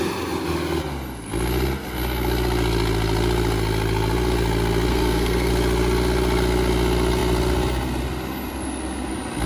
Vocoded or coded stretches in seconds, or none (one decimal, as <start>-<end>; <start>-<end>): 4.9-5.5